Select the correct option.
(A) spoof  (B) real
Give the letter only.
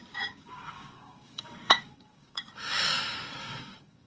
A